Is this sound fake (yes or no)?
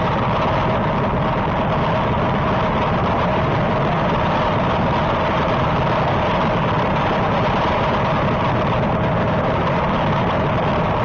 no